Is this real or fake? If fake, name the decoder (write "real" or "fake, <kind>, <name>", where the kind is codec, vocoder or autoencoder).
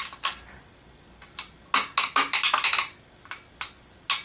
real